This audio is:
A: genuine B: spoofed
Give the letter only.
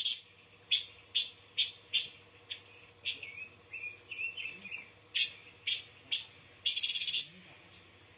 A